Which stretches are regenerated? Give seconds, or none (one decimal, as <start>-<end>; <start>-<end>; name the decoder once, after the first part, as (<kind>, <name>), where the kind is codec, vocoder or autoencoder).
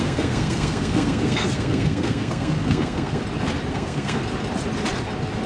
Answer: 0.0-3.2 (codec, SNAC); 3.7-4.2